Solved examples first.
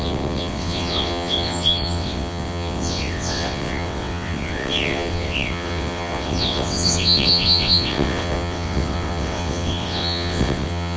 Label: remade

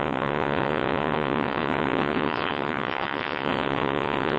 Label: remade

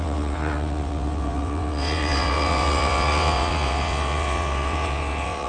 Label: remade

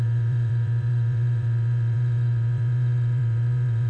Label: remade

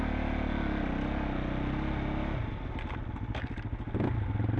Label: recorded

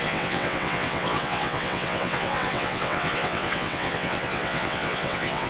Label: remade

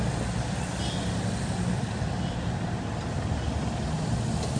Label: recorded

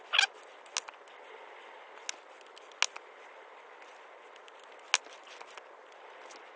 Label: recorded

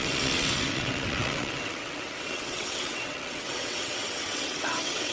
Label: remade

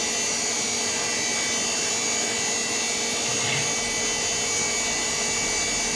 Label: recorded